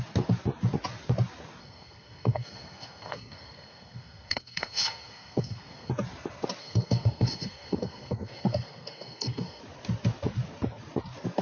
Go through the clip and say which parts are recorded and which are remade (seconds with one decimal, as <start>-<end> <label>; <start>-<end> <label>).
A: 0.0-1.6 recorded; 1.6-5.9 remade; 5.9-6.6 recorded; 6.6-9.6 remade; 9.6-11.4 recorded